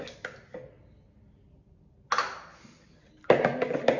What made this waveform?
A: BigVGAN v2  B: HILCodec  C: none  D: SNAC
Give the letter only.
C